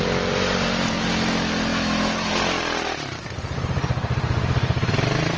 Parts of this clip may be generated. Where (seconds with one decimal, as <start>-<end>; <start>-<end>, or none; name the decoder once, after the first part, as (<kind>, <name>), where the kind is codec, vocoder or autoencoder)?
1.7-2.4 (autoencoder, DAC-VAE)